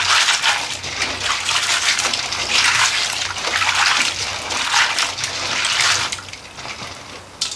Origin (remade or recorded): recorded